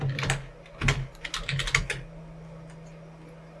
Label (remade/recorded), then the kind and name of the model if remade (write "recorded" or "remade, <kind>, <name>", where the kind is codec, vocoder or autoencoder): recorded